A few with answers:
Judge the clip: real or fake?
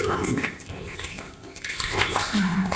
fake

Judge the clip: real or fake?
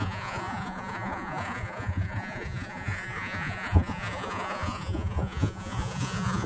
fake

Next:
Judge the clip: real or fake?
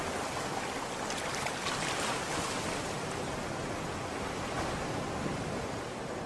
real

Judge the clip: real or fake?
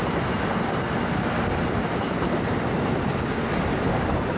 real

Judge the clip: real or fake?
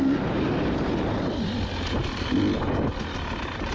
real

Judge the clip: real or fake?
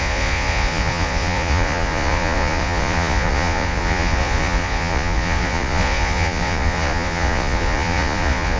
fake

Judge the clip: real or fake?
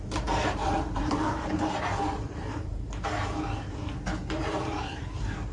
fake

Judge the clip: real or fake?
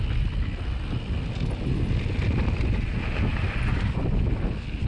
real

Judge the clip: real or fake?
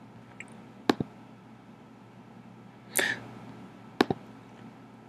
real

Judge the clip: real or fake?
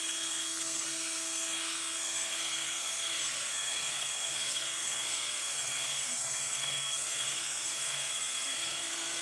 fake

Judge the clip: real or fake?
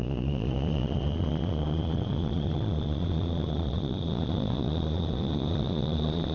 fake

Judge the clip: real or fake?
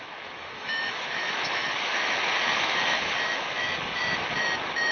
fake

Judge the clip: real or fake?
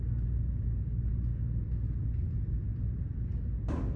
real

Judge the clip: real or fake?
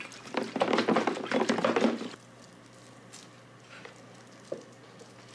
real